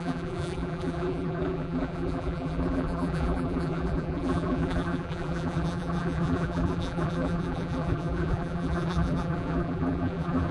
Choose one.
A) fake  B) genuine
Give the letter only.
A